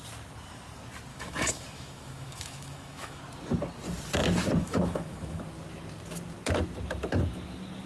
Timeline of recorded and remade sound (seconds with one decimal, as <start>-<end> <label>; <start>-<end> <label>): 0.0-1.1 recorded; 1.1-3.2 remade; 3.2-4.6 recorded; 4.6-5.4 remade; 5.4-7.9 recorded